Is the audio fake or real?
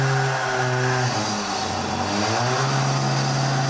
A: real